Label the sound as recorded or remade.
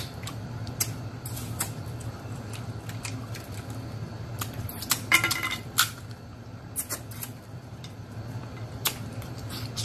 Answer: remade